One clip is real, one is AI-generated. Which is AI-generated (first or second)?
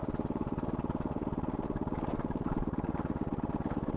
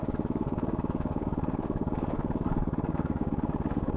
second